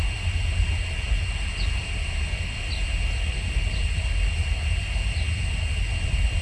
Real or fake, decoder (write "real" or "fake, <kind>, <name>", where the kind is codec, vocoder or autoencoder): real